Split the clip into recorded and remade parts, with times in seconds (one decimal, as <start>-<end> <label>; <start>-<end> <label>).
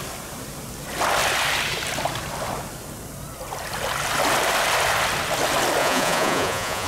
0.0-5.8 recorded; 5.8-6.9 remade